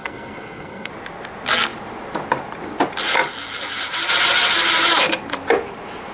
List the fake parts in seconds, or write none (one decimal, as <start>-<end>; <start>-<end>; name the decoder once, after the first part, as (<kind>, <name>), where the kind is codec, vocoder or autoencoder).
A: 0.0-0.9 (codec, SNAC)